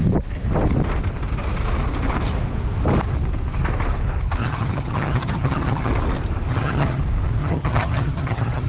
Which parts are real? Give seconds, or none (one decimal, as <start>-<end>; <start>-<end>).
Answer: 0.0-4.4; 5.9-6.5; 7.0-7.4